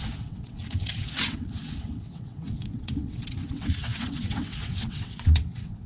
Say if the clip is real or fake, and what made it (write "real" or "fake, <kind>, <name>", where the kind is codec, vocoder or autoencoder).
fake, vocoder, WaveNeXt